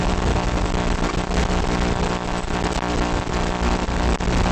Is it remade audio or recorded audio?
recorded